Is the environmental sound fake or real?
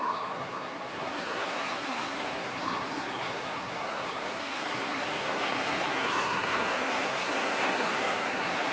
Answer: fake